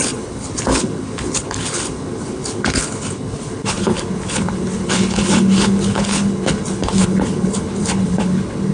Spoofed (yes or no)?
yes